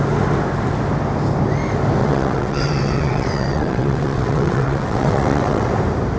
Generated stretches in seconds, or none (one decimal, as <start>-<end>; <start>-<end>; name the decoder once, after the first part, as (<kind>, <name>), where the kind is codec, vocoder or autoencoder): 2.0-5.7 (vocoder, WaveNeXt)